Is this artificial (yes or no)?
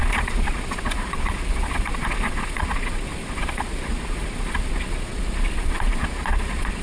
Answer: yes